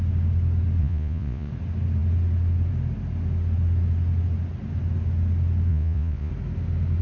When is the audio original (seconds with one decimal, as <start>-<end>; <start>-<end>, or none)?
0.0-0.8; 1.5-5.7; 6.3-7.0